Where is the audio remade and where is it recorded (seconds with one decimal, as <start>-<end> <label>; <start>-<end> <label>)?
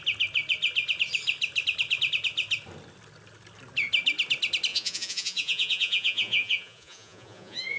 0.0-4.7 recorded; 4.7-7.8 remade